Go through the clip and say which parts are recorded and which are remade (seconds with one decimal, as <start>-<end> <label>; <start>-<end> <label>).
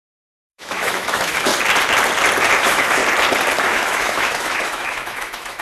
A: 0.0-1.5 remade; 1.5-2.6 recorded; 2.6-3.0 remade; 3.0-3.6 recorded; 3.6-5.6 remade